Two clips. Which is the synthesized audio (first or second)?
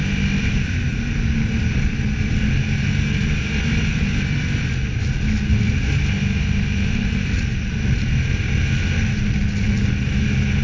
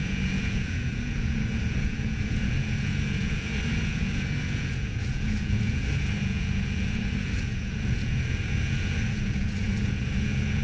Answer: second